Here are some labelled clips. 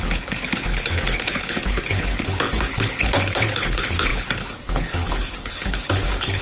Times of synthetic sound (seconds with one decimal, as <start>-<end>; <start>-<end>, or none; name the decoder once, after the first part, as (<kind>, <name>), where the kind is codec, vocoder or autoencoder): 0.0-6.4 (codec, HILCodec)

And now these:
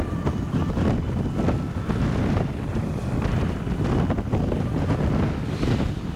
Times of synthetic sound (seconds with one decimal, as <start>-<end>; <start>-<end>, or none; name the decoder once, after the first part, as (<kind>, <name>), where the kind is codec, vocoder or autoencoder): none

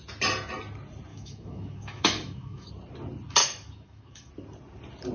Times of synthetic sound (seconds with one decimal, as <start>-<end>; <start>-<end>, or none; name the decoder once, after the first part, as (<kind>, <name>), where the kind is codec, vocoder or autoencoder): 1.1-2.7 (autoencoder, DAC-VAE); 3.4-4.3